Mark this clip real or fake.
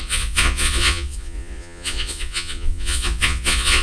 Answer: fake